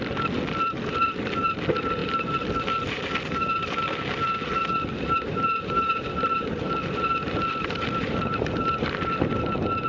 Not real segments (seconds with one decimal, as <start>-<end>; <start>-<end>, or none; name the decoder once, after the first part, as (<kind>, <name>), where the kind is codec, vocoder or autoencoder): 7.5-8.2 (vocoder, BigVGAN v2)